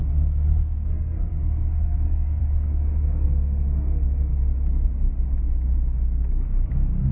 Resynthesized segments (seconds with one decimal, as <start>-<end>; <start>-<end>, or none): 0.0-4.3